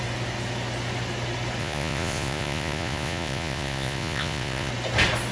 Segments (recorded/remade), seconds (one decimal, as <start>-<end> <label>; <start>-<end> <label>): 0.0-1.6 recorded; 1.6-4.7 remade; 4.7-5.3 recorded